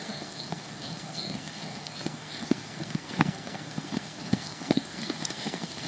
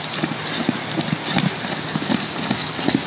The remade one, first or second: first